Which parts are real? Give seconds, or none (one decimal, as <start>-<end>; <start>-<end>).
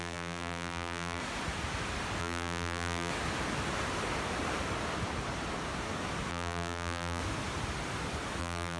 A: 1.2-2.2; 3.1-6.3; 7.2-8.4